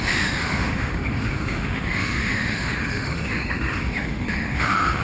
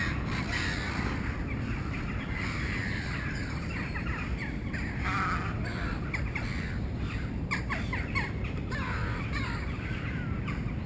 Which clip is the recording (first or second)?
second